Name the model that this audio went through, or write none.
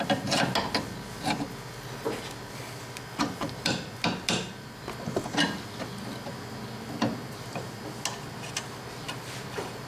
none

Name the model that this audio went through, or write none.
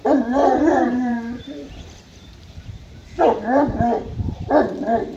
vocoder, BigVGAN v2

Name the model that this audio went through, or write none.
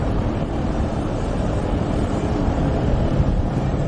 vocoder, BigVGAN v2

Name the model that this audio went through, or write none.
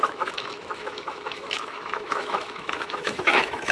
autoencoder, DAC-VAE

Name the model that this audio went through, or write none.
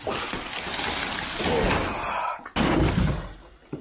none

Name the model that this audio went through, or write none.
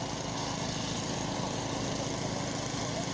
none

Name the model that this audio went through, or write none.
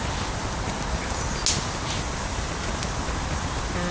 none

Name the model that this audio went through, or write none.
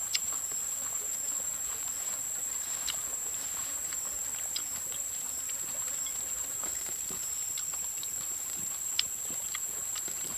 vocoder, BigVGAN v2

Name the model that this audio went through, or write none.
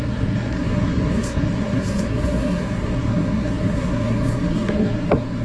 codec, SNAC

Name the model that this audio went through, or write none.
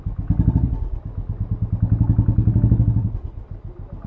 none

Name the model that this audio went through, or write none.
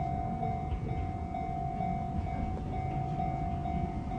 none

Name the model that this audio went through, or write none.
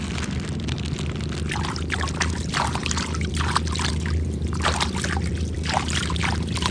none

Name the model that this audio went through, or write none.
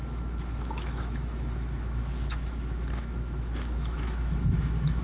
autoencoder, DAC-VAE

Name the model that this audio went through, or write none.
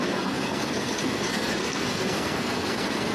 codec, SNAC